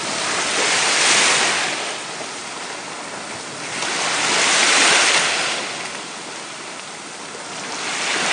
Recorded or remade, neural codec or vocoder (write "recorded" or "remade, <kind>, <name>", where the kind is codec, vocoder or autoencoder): recorded